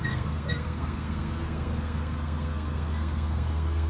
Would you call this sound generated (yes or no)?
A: yes